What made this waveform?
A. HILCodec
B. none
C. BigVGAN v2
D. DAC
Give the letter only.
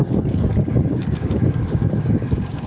D